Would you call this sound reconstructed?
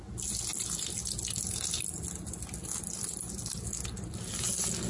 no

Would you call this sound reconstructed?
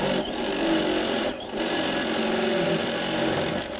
no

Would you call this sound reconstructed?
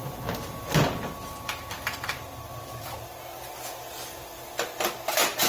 no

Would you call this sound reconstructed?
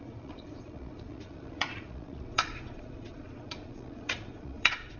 yes